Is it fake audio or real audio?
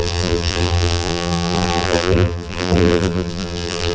fake